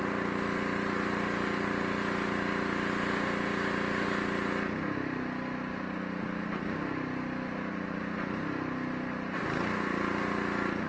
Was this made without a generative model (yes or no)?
yes